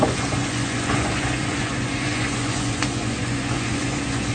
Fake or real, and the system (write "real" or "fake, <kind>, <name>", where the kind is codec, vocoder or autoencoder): fake, vocoder, Vocos